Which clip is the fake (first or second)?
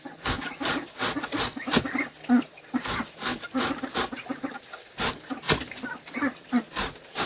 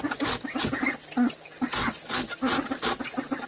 first